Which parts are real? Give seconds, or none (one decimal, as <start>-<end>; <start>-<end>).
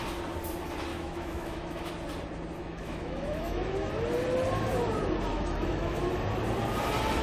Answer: 0.0-0.9; 1.9-2.6; 3.9-5.3; 6.0-7.2